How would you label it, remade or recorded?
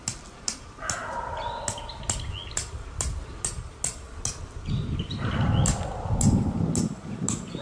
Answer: recorded